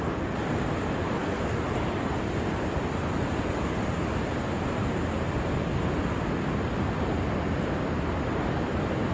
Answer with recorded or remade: recorded